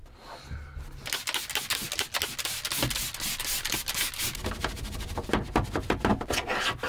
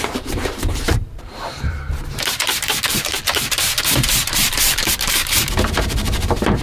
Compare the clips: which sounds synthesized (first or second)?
second